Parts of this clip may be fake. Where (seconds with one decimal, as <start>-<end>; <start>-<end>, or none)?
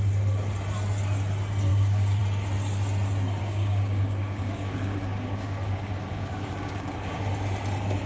1.7-2.2; 3.4-7.2